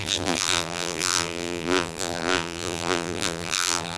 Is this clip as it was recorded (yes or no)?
no